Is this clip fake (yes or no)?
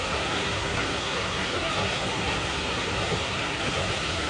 yes